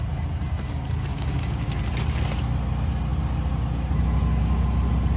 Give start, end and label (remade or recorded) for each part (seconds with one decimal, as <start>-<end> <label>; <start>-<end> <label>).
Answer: 0.0-1.1 recorded; 1.1-1.8 remade; 1.8-5.2 recorded